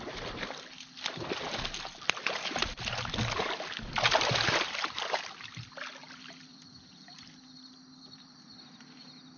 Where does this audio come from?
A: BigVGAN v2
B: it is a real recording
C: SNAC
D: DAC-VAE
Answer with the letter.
B